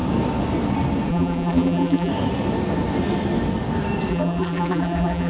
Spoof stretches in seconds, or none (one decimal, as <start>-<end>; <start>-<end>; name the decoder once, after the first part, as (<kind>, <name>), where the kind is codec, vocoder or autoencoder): 1.1-2.1 (vocoder, BigVGAN v2); 4.1-5.3